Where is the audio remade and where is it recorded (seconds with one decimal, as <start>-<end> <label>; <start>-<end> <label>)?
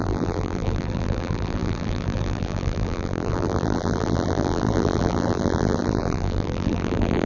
0.0-7.3 remade